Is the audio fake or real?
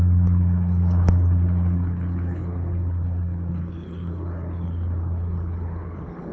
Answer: fake